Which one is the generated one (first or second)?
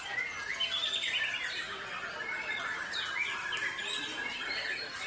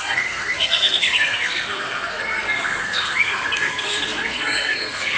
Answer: second